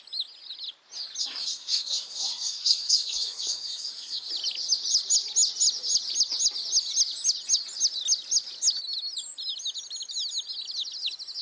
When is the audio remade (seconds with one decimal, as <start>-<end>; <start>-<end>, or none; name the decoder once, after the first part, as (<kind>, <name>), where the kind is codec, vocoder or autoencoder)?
1.2-4.3 (codec, SNAC)